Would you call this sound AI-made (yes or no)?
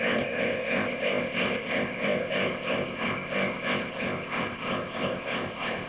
yes